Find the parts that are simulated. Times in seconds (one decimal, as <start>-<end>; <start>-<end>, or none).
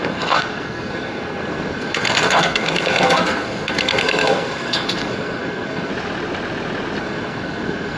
0.0-5.9; 7.0-8.0